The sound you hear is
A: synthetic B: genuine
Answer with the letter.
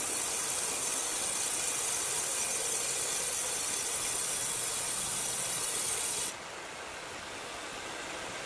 B